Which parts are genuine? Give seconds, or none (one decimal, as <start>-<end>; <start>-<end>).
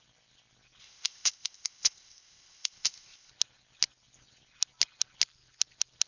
0.0-0.8; 3.3-6.1